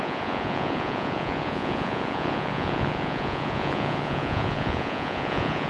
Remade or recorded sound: remade